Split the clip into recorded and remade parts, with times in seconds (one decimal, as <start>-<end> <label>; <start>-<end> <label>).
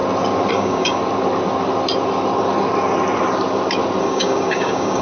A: 0.0-0.5 recorded; 0.5-1.0 remade; 1.0-4.0 recorded; 4.0-5.0 remade